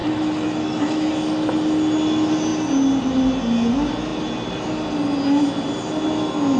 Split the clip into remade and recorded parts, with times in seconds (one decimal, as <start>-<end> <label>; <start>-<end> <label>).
0.0-1.1 remade; 1.1-6.6 recorded